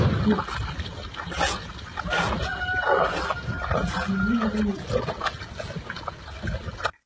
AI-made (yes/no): no